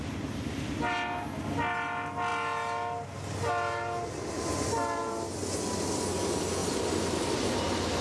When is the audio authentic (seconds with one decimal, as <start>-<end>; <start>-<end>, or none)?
0.0-8.0